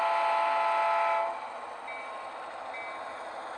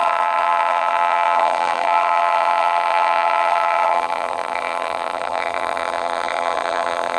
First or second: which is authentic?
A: first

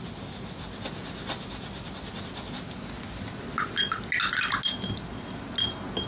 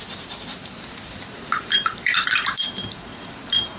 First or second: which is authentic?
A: first